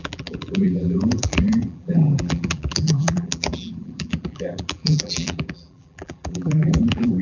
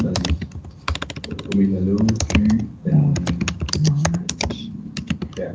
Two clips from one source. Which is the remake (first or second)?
first